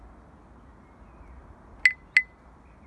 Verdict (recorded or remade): recorded